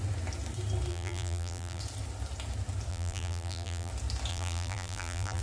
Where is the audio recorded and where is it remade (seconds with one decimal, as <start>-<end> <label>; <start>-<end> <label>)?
0.0-0.9 recorded; 0.9-1.8 remade; 1.8-2.9 recorded; 2.9-3.9 remade; 3.9-4.3 recorded; 4.3-5.4 remade